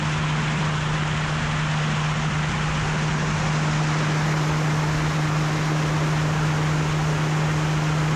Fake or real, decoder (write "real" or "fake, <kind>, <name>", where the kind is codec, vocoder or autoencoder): real